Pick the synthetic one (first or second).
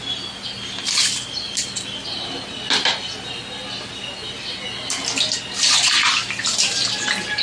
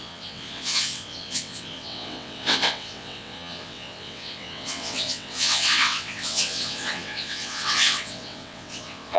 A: second